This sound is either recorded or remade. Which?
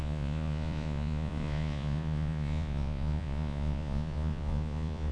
remade